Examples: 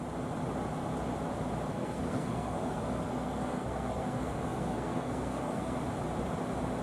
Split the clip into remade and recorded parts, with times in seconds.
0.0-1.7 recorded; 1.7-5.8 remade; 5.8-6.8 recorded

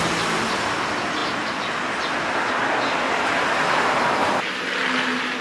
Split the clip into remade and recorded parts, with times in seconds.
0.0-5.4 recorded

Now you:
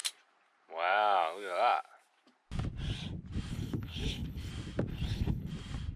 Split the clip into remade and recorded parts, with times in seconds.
0.0-3.5 recorded; 3.5-4.5 remade; 4.5-4.9 recorded; 4.9-5.5 remade; 5.5-6.0 recorded

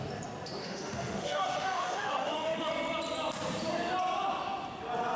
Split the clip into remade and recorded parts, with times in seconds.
0.0-0.6 recorded; 0.6-2.7 remade; 2.7-5.2 recorded

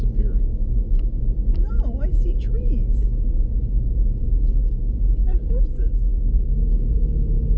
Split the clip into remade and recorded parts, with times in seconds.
0.0-0.5 recorded; 0.5-1.2 remade; 1.2-7.6 recorded

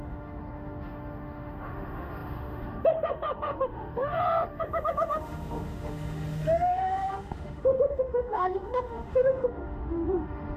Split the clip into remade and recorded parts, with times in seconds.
0.0-10.6 remade

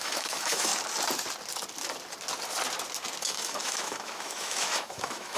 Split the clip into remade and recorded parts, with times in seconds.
0.0-0.7 remade; 0.7-3.2 recorded; 3.2-5.4 remade

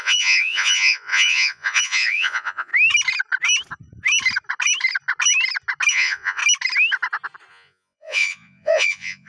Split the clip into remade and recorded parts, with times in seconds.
0.0-2.7 remade; 2.7-5.9 recorded; 5.9-6.4 remade; 6.4-7.5 recorded; 7.5-9.3 remade